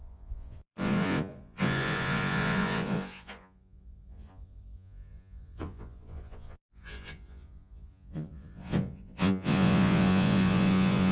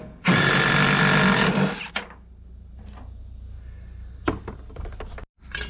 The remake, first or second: first